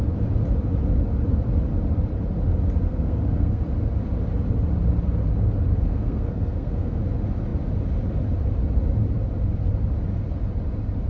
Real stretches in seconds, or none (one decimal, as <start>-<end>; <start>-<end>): 0.0-2.9; 3.6-5.9; 7.0-11.1